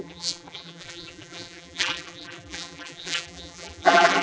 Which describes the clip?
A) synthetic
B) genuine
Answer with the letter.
A